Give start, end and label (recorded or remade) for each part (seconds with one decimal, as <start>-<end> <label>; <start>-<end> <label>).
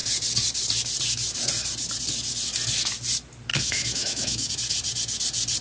0.0-3.5 recorded; 3.5-4.5 remade; 4.5-5.6 recorded